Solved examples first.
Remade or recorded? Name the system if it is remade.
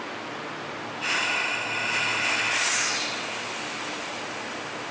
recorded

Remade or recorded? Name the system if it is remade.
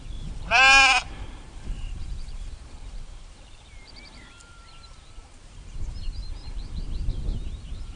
remade, vocoder, BigVGAN v2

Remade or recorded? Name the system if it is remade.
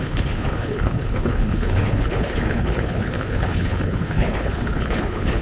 remade, codec, HILCodec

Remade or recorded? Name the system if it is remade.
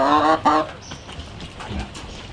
recorded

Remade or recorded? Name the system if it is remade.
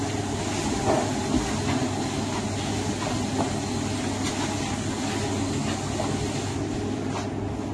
recorded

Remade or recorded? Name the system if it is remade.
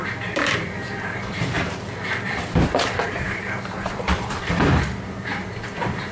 remade, vocoder, BigVGAN v2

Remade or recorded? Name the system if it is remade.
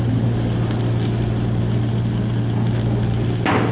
recorded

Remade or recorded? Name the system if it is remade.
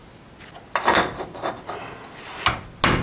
recorded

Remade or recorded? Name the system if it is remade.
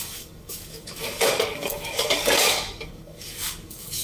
remade, codec, DAC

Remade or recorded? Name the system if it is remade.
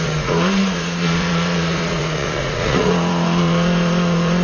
remade, vocoder, Vocos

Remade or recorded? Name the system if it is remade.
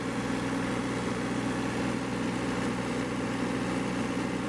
recorded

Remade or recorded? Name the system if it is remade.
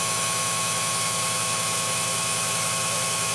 remade, autoencoder, DAC-VAE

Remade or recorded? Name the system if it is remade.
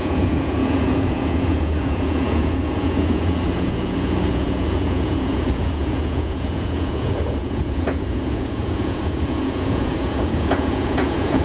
remade, vocoder, Vocos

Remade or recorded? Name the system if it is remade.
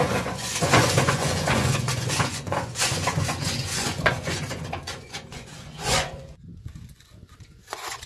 remade, vocoder, Vocos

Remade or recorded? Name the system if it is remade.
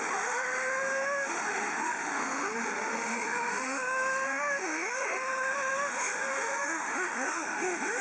remade, autoencoder, DAC-VAE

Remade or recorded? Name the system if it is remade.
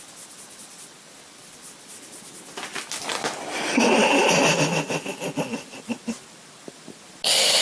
recorded